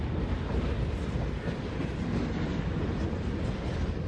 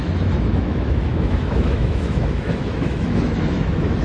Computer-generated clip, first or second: second